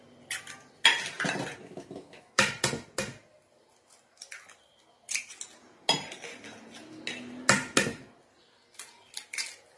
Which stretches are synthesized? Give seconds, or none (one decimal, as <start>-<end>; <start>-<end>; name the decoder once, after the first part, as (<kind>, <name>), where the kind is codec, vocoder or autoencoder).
1.6-2.5 (autoencoder, DAC-VAE)